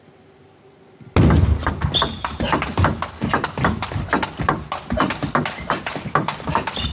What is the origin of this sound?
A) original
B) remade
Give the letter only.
A